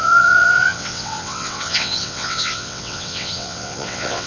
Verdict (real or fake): fake